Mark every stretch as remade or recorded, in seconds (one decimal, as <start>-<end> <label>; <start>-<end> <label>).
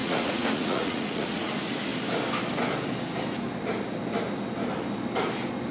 0.0-1.5 remade; 1.5-5.7 recorded